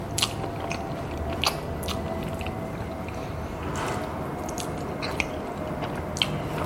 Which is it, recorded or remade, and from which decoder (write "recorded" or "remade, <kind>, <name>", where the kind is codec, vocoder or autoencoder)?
recorded